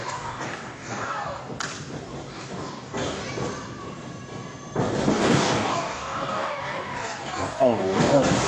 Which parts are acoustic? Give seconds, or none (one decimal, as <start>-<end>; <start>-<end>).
1.4-2.3; 3.2-5.1